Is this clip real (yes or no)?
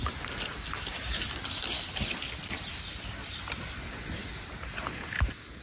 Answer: yes